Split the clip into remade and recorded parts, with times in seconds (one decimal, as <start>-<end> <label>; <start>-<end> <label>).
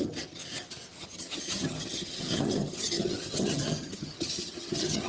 0.0-0.4 remade; 0.4-1.0 recorded; 1.0-5.1 remade